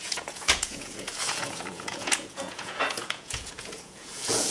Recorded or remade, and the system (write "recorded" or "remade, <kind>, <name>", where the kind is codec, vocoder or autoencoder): remade, vocoder, Vocos